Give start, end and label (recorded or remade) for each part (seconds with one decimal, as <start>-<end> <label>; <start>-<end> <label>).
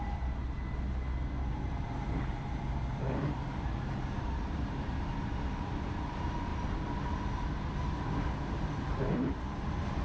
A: 0.0-0.4 remade; 0.4-1.5 recorded; 1.5-6.5 remade; 6.5-8.2 recorded; 8.2-10.0 remade